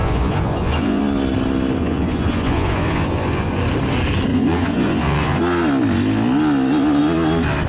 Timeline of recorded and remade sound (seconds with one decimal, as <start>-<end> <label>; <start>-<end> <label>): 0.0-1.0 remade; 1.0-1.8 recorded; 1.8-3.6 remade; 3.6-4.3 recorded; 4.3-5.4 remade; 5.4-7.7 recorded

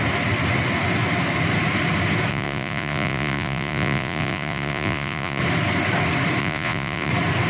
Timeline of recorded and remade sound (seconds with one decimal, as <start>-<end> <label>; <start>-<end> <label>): 0.0-2.3 recorded; 2.3-5.4 remade; 5.4-6.4 recorded; 6.4-7.1 remade; 7.1-7.5 recorded

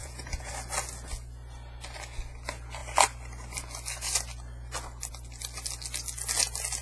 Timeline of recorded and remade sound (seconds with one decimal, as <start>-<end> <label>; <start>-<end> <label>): 0.0-0.5 remade; 0.5-6.8 recorded

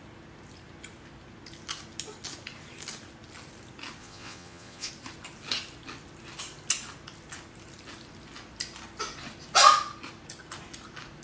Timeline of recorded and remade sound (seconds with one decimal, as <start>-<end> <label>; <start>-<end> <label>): 0.0-4.0 recorded; 4.0-4.9 remade; 4.9-11.2 recorded

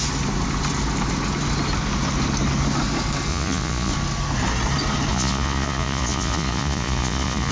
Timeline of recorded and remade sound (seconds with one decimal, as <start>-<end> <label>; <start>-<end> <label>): 0.0-3.3 recorded; 3.3-3.9 remade; 3.9-5.1 recorded; 5.1-7.5 remade